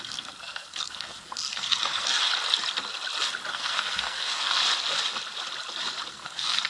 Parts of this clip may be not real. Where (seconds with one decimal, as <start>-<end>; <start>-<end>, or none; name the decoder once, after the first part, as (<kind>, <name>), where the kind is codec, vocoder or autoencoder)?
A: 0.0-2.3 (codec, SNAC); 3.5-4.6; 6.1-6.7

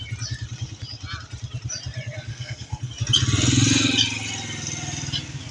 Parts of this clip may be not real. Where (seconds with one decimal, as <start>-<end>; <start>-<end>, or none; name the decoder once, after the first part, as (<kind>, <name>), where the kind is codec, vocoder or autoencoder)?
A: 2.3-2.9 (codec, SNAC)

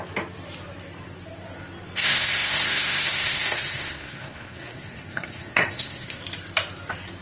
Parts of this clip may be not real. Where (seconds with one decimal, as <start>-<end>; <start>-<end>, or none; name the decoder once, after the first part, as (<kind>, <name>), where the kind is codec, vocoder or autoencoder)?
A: 2.0-6.2 (codec, SNAC)

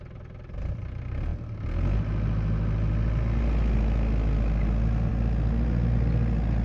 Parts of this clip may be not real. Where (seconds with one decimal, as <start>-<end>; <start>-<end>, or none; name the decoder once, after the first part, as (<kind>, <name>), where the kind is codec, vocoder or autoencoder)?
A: none

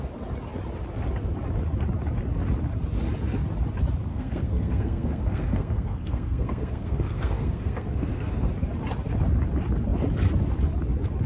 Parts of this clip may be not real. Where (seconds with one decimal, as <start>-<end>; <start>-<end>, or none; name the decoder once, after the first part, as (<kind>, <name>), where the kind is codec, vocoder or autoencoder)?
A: 4.1-8.5 (codec, SNAC)

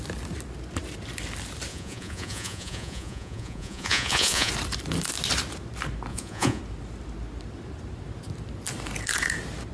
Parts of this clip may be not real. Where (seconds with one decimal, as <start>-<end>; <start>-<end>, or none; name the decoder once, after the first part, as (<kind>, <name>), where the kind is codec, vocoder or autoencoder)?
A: 1.7-4.5 (vocoder, Vocos); 6.1-6.6

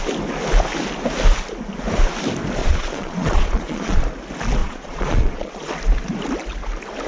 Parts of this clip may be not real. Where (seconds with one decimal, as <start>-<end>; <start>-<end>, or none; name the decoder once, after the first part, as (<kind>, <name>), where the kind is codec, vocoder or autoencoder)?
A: 2.6-4.0 (vocoder, Vocos); 4.6-5.7